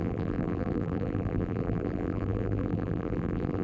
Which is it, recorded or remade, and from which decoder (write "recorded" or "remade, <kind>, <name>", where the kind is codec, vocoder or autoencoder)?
remade, vocoder, BigVGAN v2